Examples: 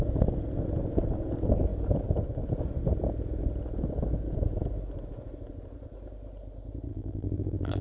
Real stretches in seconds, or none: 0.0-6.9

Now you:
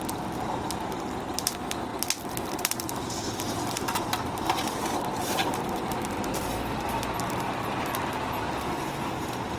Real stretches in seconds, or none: 0.0-1.9; 6.9-9.6

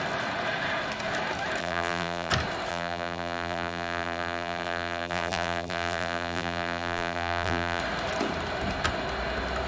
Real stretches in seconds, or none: 0.0-1.6; 2.3-2.7; 7.8-9.7

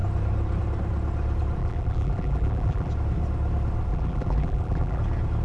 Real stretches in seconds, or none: 0.0-1.6; 2.9-3.9; 5.0-5.4

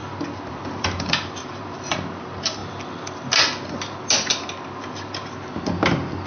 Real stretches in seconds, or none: 0.0-0.8; 2.6-6.3